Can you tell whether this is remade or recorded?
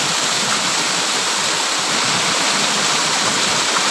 recorded